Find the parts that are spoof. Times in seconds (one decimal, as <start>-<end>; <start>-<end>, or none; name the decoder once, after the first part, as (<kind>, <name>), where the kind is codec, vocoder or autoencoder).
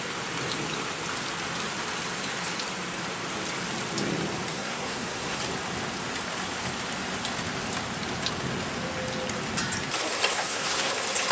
4.5-5.4 (codec, SNAC); 10.3-10.9